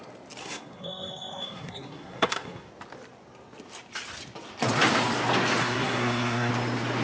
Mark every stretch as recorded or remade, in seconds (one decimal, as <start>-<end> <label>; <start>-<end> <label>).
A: 0.0-0.4 recorded; 0.4-2.7 remade; 2.7-5.6 recorded; 5.6-6.5 remade; 6.5-7.0 recorded